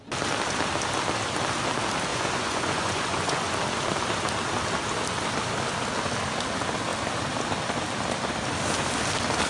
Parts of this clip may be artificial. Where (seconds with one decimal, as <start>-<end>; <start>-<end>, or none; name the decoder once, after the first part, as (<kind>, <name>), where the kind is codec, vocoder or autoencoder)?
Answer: 2.1-3.5 (vocoder, Vocos)